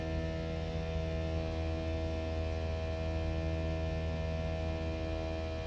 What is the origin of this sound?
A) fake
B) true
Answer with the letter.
B